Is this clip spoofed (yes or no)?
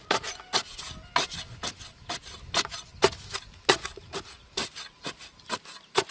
no